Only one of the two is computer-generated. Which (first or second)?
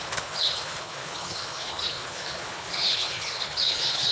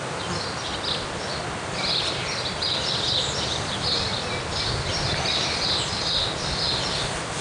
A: first